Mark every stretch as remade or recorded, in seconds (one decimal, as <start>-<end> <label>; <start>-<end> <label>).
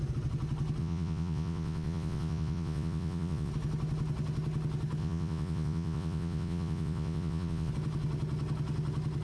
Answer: 0.0-0.8 recorded; 0.8-3.5 remade; 3.5-5.0 recorded; 5.0-7.7 remade; 7.7-9.2 recorded